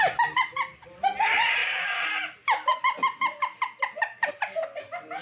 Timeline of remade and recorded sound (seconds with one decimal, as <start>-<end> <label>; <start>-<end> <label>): 0.0-5.2 recorded